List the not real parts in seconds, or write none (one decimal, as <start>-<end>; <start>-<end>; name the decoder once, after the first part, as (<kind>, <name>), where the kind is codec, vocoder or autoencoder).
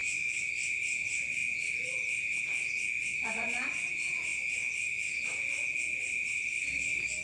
0.0-0.5 (autoencoder, DAC-VAE)